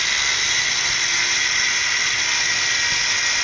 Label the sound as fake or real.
real